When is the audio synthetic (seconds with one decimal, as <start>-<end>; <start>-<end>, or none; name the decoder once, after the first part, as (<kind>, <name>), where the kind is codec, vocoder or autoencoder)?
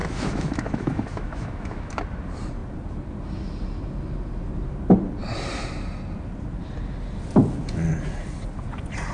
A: 0.0-1.9 (autoencoder, DAC-VAE)